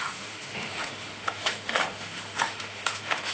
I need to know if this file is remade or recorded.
remade